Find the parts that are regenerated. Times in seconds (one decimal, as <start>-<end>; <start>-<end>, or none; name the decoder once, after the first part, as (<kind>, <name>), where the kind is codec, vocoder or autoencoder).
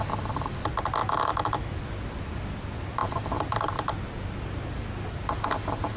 1.0-1.8 (autoencoder, DAC-VAE)